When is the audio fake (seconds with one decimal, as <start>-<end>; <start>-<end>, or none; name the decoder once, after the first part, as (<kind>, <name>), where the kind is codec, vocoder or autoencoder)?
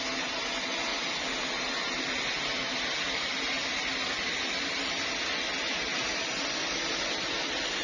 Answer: none